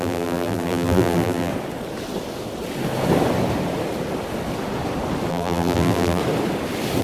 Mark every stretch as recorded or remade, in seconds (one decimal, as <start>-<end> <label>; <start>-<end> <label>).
0.0-1.5 remade; 1.5-5.3 recorded; 5.3-6.2 remade; 6.2-7.0 recorded